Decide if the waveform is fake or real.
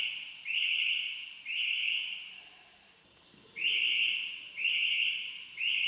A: fake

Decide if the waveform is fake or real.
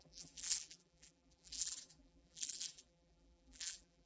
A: fake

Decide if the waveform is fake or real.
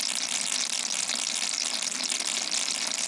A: real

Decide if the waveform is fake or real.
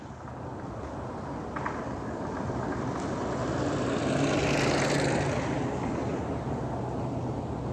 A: real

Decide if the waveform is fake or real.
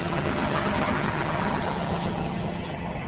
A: fake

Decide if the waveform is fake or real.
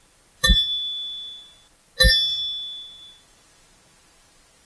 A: real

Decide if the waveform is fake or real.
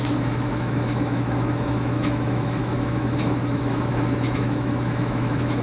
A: fake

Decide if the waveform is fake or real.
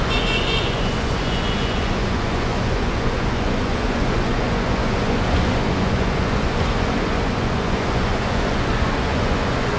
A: fake